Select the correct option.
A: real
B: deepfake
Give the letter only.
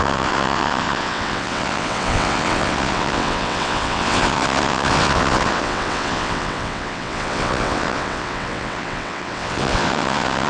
B